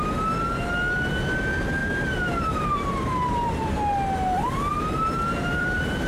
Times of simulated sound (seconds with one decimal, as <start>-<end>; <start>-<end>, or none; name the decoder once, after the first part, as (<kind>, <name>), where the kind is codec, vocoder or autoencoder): 1.8-3.8 (vocoder, BigVGAN v2); 4.7-6.1